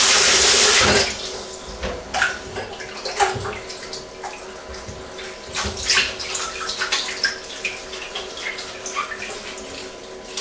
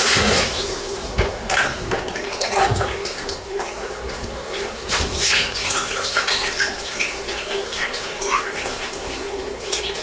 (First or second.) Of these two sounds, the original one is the first